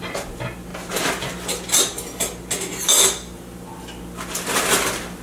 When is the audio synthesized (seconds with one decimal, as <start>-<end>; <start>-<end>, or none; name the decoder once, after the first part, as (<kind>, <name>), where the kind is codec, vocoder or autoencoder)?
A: none